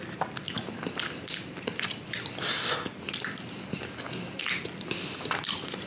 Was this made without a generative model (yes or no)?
yes